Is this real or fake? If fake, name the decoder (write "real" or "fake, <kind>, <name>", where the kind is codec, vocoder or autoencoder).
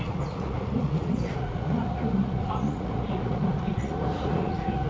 fake, vocoder, Vocos